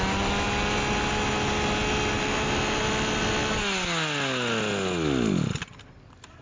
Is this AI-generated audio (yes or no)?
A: no